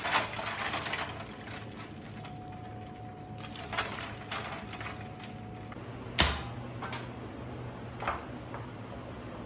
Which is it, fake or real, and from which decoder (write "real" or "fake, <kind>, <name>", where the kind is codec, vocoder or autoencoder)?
real